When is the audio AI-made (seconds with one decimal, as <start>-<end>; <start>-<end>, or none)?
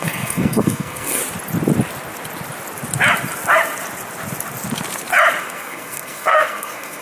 0.0-1.2; 5.4-7.0